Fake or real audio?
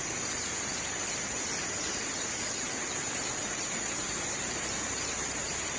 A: real